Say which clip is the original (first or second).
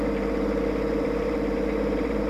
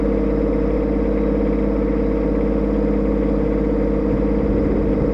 second